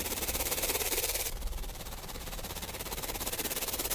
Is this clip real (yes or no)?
no